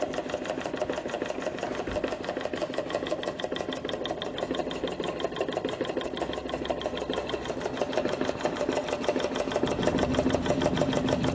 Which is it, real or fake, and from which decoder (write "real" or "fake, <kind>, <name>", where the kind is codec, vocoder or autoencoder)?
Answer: real